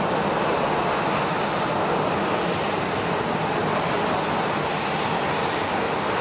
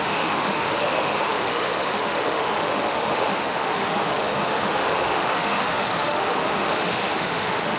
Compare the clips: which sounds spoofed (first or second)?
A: second